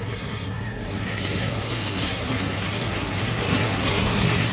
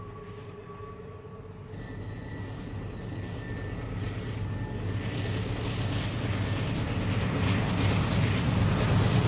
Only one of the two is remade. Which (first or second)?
first